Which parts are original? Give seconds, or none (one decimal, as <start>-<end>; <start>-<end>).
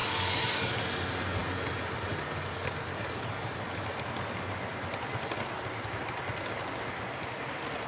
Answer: 0.7-2.9; 3.5-7.9